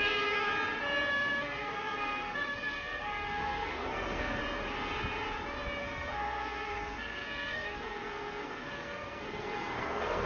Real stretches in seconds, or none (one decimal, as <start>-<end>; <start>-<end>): 0.5-1.1; 4.4-5.8